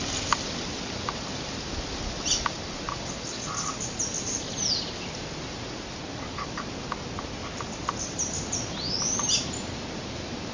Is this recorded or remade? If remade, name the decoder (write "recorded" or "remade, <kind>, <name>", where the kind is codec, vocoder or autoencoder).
recorded